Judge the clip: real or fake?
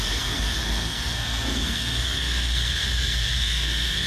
fake